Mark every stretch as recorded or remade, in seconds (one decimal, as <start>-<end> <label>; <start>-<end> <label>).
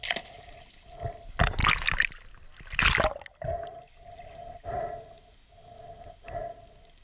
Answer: 0.0-7.0 recorded